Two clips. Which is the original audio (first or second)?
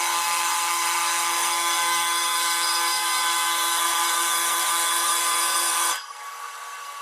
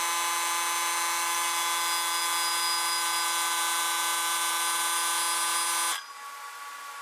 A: second